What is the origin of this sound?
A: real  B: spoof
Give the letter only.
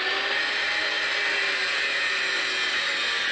A